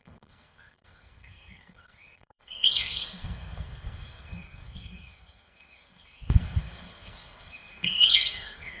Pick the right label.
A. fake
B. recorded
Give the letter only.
A